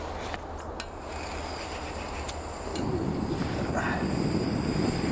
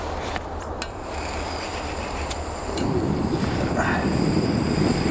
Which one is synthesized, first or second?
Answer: second